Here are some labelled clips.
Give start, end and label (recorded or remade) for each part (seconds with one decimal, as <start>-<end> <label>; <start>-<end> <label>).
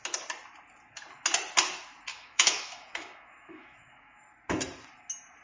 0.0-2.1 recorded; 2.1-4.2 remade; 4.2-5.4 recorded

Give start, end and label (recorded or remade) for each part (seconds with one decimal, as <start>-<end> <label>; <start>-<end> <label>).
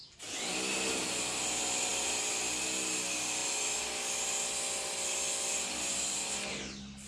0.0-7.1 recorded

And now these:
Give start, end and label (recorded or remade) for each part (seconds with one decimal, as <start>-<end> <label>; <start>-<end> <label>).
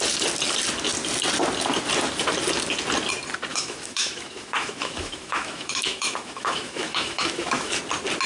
0.0-3.5 recorded; 3.5-7.8 remade; 7.8-8.3 recorded